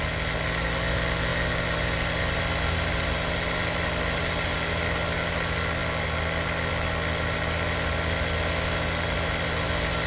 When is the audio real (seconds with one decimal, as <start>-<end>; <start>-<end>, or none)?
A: 0.0-10.1